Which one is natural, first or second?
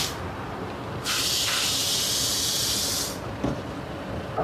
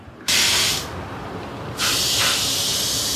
first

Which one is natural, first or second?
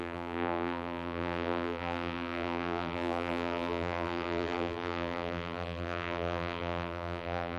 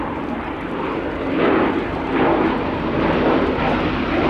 second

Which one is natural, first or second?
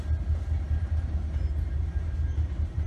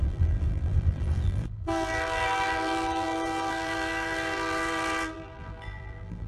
first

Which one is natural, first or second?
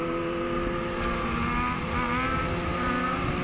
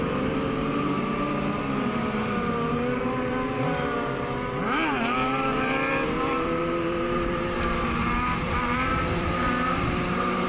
first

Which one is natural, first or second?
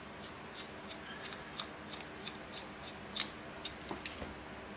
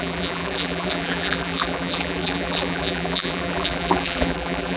first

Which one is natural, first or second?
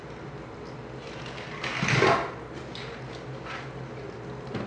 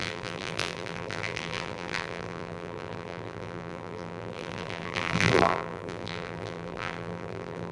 first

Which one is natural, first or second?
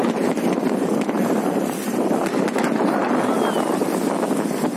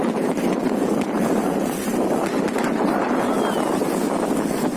first